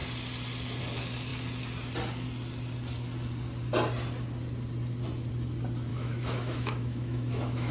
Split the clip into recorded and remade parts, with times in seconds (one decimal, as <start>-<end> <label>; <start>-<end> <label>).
0.0-5.9 recorded; 5.9-7.7 remade